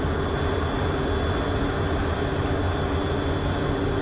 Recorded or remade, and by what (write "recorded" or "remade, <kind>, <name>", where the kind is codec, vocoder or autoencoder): recorded